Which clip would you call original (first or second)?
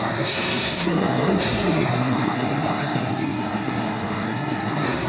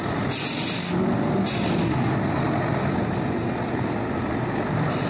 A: second